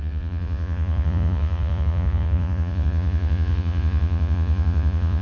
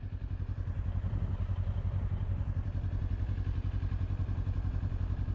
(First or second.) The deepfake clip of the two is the first